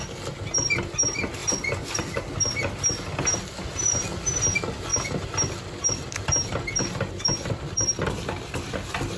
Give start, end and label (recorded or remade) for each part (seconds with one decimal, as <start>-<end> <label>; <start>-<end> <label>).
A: 0.0-9.2 recorded